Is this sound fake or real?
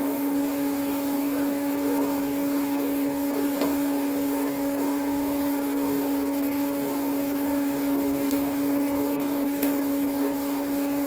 fake